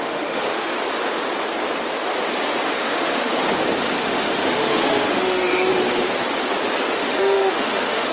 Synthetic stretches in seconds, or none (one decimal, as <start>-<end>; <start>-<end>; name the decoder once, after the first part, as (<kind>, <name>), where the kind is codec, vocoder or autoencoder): 0.0-0.8 (autoencoder, DAC-VAE); 2.6-3.4; 4.0-5.7; 6.9-8.1